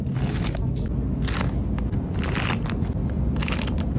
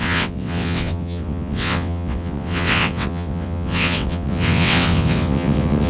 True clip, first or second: first